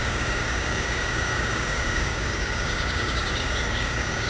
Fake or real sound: fake